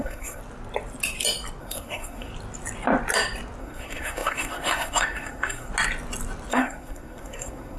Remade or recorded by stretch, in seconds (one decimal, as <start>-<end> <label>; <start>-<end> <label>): 0.0-0.4 remade; 0.4-1.6 recorded; 1.6-2.3 remade; 2.3-3.6 recorded; 3.6-5.7 remade; 5.7-6.5 recorded; 6.5-7.8 remade